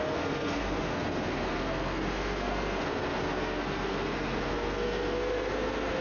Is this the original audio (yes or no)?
no